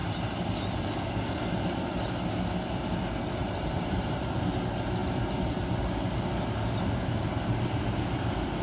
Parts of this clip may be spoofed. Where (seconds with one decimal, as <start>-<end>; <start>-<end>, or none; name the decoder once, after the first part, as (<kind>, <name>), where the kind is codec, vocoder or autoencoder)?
0.0-0.7 (vocoder, BigVGAN v2); 3.4-4.2